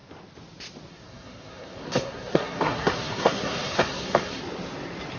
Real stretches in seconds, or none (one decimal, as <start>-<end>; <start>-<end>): 0.0-0.9; 4.4-5.2